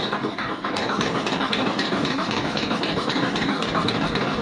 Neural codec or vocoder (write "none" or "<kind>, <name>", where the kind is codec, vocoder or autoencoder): codec, DAC